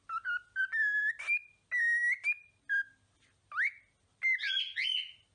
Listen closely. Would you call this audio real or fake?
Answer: real